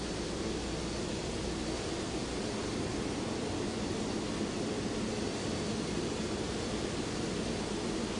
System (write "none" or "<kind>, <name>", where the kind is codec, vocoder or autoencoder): none